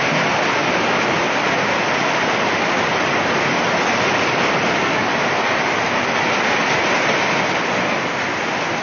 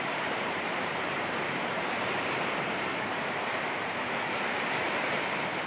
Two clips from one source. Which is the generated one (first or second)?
second